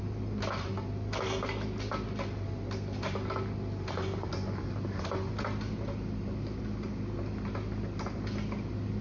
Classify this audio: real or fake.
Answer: real